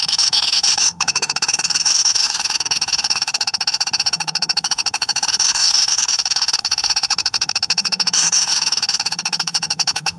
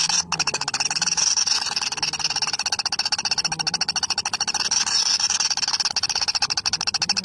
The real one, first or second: second